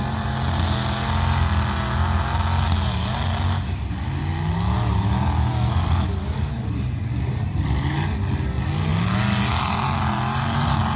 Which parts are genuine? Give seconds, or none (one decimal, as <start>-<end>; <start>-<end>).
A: 0.0-11.0